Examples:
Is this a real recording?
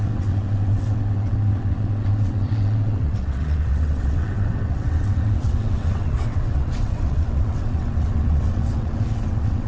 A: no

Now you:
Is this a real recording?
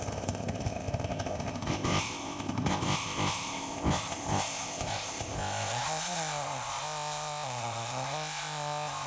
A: no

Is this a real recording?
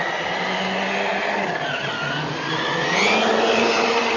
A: yes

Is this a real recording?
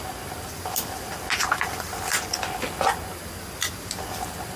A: yes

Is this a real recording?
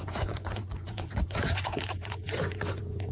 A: no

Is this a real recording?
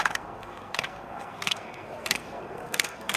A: no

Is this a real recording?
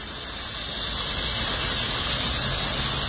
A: yes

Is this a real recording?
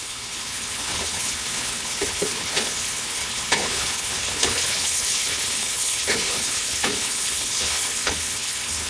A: no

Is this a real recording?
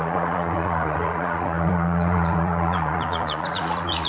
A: no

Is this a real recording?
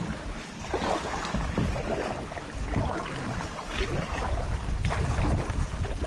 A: yes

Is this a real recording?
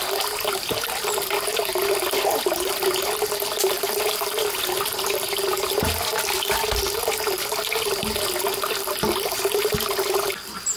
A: yes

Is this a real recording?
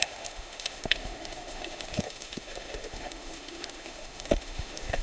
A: no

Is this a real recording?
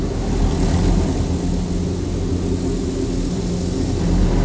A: yes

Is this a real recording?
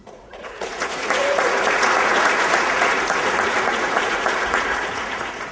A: no